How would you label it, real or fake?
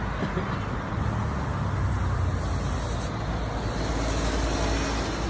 real